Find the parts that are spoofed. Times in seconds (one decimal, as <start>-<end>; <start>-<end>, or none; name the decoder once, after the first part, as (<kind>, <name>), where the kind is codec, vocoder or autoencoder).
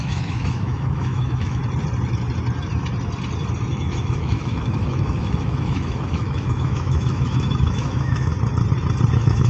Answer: 0.0-1.6 (autoencoder, DAC-VAE); 3.7-8.3; 9.1-9.5